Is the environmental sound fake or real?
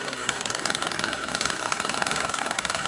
fake